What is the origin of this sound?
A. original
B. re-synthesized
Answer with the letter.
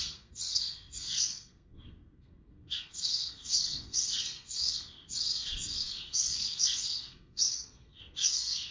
B